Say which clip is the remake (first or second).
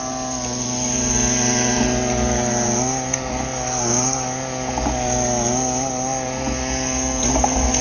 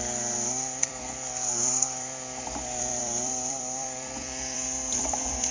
second